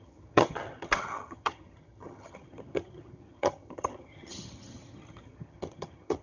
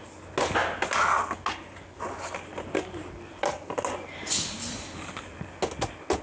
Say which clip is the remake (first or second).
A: first